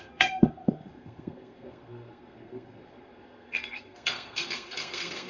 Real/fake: fake